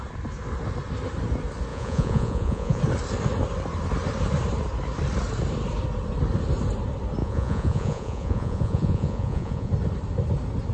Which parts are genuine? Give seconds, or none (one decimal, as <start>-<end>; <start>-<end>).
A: 0.0-1.7; 2.8-7.2; 9.7-10.7